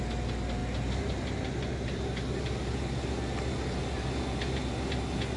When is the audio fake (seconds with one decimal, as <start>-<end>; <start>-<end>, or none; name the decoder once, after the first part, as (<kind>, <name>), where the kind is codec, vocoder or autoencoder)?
none